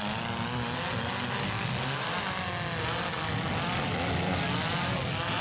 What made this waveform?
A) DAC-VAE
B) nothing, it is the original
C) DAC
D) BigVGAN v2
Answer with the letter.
B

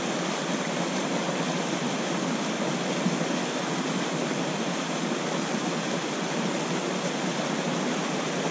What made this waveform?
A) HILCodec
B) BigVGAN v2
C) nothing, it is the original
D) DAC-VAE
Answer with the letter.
C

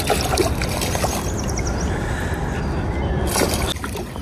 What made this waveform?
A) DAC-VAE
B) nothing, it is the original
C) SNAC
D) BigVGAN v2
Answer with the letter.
B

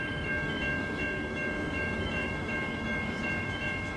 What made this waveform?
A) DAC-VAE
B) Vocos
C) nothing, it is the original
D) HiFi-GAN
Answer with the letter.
A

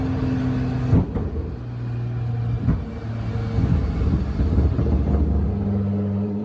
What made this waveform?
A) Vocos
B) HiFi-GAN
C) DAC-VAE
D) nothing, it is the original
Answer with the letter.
D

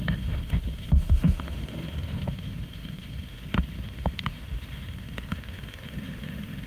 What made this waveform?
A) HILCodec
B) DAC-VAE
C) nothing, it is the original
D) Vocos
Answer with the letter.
B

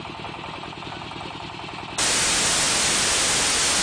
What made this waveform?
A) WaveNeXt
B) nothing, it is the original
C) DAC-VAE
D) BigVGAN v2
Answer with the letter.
B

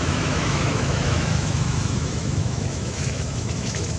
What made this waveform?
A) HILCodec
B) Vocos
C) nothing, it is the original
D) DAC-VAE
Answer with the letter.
D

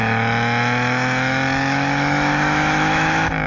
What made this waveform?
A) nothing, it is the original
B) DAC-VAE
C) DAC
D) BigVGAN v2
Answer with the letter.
B